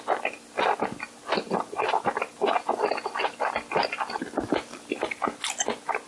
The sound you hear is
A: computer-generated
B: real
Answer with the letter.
B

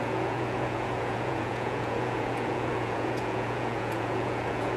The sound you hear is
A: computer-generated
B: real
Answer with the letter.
A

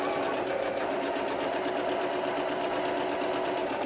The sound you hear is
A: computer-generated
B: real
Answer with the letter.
B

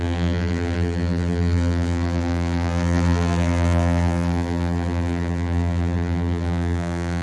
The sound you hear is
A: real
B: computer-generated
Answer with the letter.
B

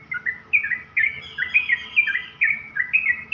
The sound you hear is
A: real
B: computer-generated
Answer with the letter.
A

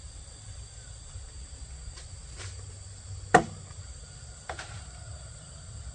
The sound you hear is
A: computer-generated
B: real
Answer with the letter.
B